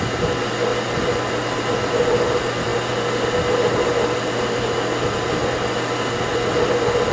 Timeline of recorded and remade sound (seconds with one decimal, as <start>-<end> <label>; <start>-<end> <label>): 0.0-7.1 recorded